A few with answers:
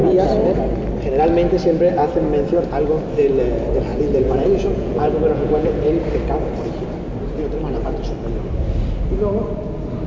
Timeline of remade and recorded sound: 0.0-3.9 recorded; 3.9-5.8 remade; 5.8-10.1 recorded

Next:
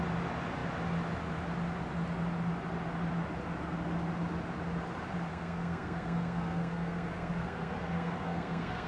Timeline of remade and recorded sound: 0.0-5.3 recorded; 5.3-8.9 remade